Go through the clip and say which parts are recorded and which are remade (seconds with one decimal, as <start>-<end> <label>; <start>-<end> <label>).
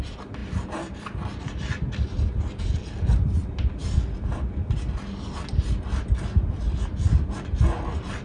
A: 0.0-0.4 recorded; 0.4-3.7 remade; 3.7-8.2 recorded